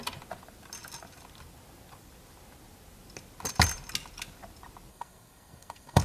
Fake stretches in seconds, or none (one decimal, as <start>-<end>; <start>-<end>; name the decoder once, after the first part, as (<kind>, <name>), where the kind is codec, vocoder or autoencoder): 4.9-6.0 (codec, SNAC)